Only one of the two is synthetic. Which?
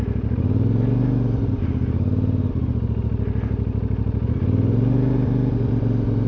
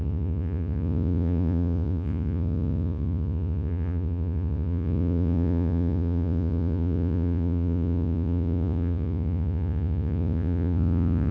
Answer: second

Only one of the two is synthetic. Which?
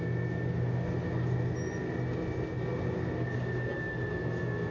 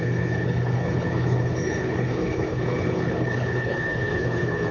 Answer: second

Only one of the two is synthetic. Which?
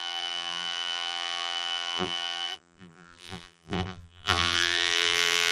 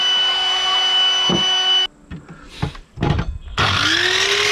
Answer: first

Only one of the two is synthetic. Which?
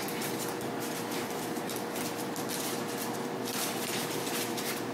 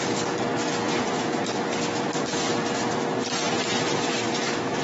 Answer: first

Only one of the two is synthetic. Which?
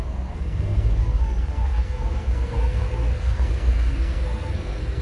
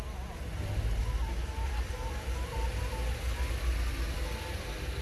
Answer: first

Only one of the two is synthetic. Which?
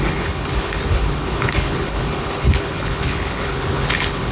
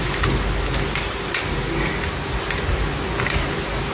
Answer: first